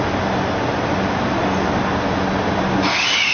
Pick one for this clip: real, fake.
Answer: real